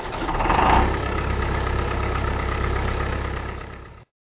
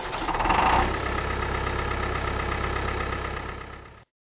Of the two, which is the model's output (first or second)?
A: first